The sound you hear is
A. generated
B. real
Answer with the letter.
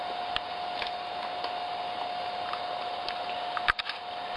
B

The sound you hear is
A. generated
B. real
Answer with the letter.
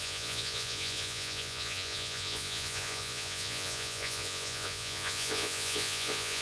A